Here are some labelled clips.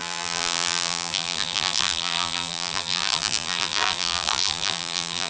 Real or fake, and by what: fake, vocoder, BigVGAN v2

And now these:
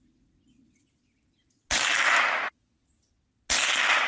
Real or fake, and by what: real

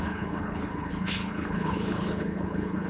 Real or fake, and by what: fake, codec, HILCodec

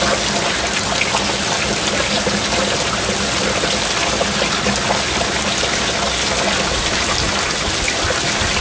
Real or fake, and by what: real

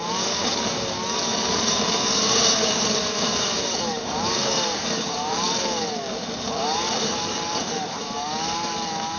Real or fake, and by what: fake, codec, DAC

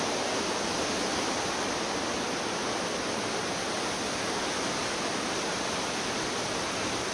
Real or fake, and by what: real